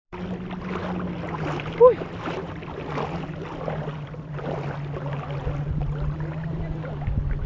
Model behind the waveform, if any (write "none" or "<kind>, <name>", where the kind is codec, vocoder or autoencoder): none